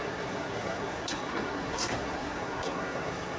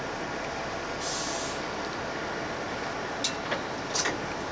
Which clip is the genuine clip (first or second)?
second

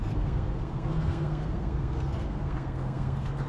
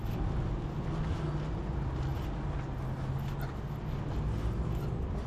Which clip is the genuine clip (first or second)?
second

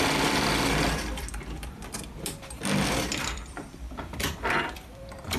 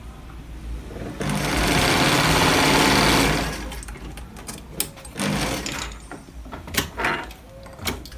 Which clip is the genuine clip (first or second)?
second